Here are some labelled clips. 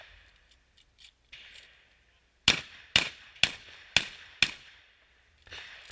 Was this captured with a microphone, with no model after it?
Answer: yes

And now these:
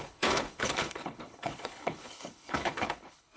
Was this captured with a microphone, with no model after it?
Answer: no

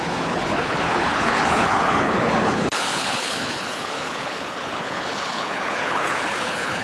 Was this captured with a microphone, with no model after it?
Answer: no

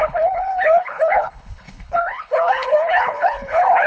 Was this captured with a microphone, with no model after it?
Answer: no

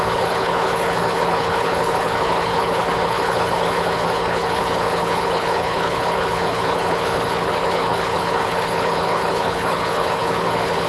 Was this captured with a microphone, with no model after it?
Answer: no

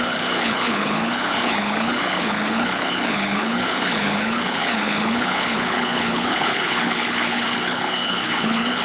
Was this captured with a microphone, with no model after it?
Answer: no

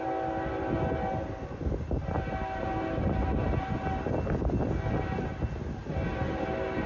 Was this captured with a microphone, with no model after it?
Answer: yes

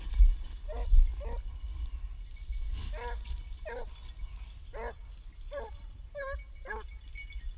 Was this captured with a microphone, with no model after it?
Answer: yes